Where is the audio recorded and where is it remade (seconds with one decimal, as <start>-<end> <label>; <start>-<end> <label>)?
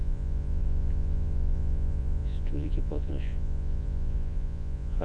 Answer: 0.0-5.0 remade